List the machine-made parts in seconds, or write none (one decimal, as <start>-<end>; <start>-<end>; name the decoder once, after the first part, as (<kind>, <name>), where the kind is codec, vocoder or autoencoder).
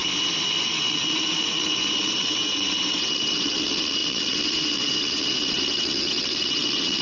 0.6-7.0 (vocoder, WaveNeXt)